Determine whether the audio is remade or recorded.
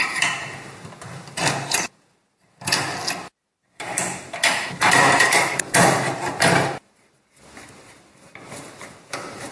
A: recorded